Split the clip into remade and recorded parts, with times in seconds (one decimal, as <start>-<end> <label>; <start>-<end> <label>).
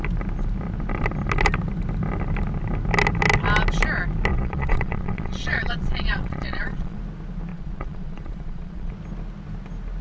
0.0-4.3 recorded; 4.3-7.0 remade; 7.0-7.5 recorded; 7.5-8.9 remade; 8.9-10.0 recorded